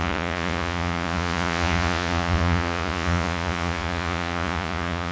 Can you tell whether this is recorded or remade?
remade